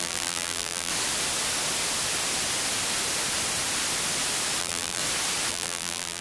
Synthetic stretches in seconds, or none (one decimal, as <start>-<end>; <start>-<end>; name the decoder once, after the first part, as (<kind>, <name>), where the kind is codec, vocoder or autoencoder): 0.0-0.9 (vocoder, BigVGAN v2); 4.6-5.0; 5.5-6.2